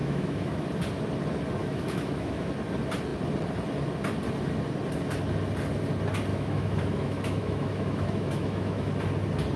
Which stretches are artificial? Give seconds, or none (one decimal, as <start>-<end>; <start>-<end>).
0.0-0.6; 1.6-2.5; 6.3-8.9